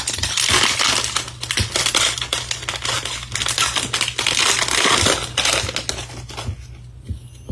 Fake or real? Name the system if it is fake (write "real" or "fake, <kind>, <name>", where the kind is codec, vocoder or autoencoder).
real